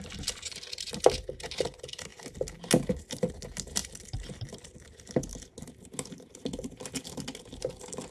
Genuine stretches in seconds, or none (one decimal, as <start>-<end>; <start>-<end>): 0.0-8.1